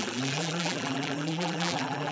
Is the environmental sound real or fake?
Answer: fake